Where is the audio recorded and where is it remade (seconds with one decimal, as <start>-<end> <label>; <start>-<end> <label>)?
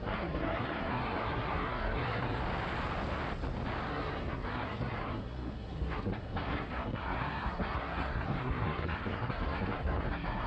0.0-2.4 remade; 2.4-3.9 recorded; 3.9-10.5 remade